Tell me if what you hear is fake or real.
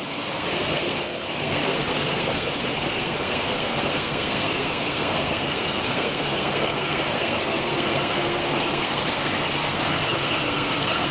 fake